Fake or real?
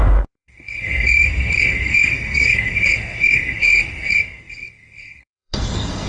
fake